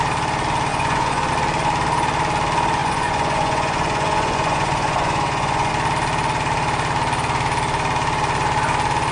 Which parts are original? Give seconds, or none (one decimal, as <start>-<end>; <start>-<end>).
0.0-0.7; 1.3-2.8; 5.7-9.1